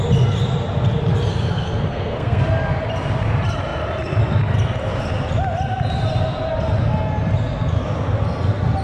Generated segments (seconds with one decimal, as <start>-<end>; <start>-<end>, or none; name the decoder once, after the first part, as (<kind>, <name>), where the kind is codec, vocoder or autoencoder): 1.3-2.4 (codec, SNAC)